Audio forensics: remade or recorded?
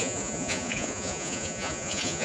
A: remade